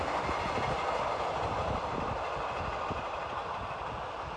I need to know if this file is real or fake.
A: real